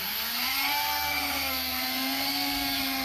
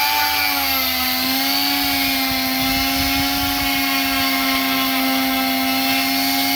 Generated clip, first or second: first